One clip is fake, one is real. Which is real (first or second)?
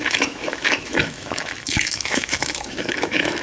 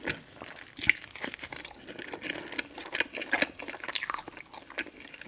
second